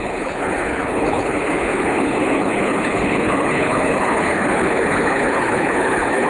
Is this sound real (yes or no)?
no